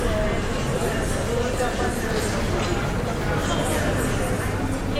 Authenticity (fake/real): real